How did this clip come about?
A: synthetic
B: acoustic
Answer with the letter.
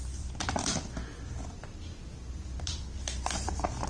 B